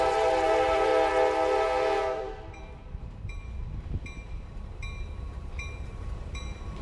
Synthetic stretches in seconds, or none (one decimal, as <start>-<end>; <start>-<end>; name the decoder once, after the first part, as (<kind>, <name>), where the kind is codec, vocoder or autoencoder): 0.0-0.9 (vocoder, BigVGAN v2); 2.2-6.8